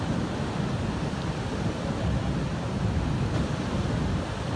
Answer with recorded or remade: recorded